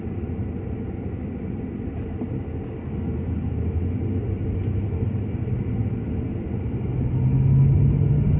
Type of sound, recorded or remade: recorded